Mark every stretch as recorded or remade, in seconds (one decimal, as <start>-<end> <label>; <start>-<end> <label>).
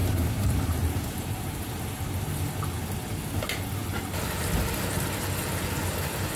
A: 0.0-2.3 remade; 2.3-6.4 recorded